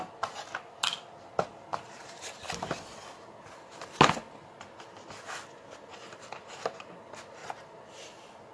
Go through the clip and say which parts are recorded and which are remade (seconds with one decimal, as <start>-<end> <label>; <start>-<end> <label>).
0.0-1.7 recorded; 1.7-2.4 remade; 2.4-5.9 recorded; 5.9-6.9 remade; 6.9-7.4 recorded; 7.4-7.9 remade; 7.9-8.5 recorded